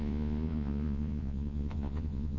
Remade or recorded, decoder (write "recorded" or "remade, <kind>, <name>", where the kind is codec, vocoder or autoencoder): remade, vocoder, Vocos